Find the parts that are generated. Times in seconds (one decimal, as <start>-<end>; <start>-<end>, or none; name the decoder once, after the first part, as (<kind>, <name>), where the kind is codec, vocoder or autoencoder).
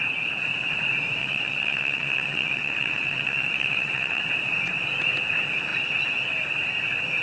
1.2-4.2 (vocoder, WaveNeXt)